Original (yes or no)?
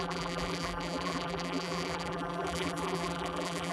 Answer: no